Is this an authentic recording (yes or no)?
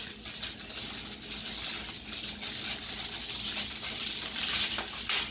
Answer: yes